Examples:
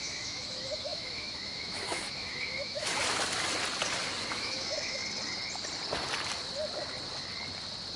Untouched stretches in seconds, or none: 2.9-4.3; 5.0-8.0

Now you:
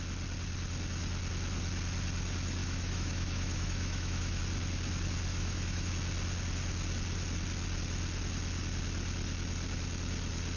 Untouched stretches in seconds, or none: 0.0-2.6; 4.4-5.3; 5.9-10.6

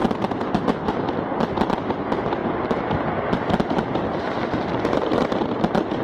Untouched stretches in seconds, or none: 0.0-6.0

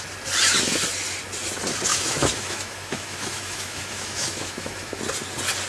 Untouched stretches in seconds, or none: 0.0-1.9; 5.0-5.7